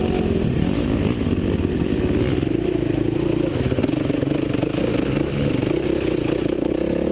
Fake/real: real